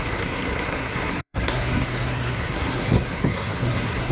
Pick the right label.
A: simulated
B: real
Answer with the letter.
A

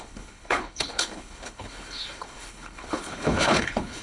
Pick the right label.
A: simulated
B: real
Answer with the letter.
A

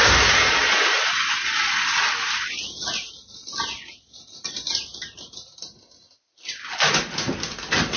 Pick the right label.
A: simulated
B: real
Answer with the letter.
B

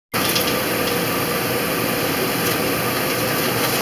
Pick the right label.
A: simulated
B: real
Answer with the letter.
B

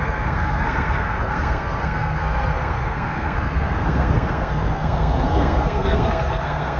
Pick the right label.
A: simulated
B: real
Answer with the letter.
A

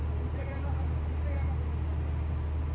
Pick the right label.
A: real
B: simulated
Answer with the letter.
A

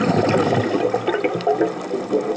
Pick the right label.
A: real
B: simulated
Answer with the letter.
A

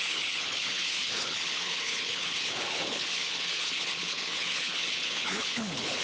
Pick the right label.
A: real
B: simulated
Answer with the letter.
B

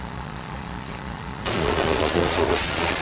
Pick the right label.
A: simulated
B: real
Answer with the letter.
A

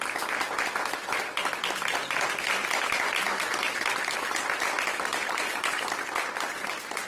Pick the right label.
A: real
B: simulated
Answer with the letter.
A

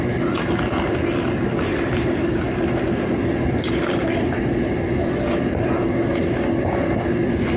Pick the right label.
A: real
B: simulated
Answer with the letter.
A